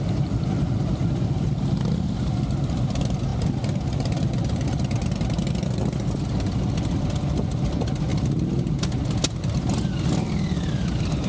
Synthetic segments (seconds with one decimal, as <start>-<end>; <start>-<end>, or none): none

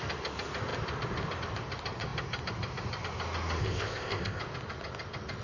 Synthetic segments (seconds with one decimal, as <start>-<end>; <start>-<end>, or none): 3.6-4.4